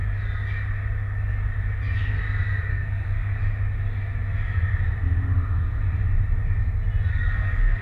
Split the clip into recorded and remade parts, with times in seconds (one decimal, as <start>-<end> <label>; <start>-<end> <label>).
0.0-2.7 recorded; 2.7-3.3 remade; 3.3-7.1 recorded; 7.1-7.8 remade